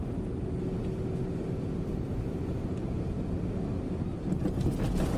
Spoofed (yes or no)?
no